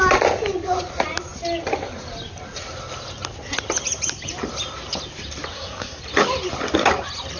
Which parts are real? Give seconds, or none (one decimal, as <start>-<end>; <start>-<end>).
0.0-5.5; 6.0-7.4